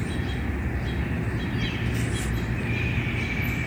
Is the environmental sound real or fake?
real